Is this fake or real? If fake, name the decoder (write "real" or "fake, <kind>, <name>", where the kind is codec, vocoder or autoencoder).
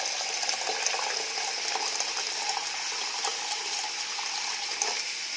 real